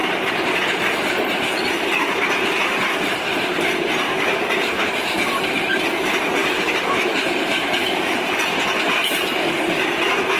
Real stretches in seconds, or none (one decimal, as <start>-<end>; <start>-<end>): 0.0-6.4; 8.6-10.4